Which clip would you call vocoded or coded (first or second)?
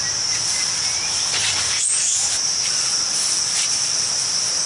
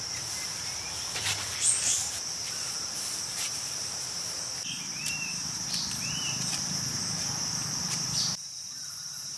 second